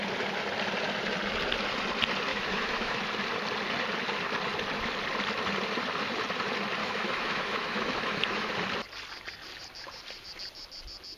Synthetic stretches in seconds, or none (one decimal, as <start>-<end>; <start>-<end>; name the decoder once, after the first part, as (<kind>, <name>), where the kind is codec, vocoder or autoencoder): 2.3-3.0 (autoencoder, DAC-VAE); 6.8-8.5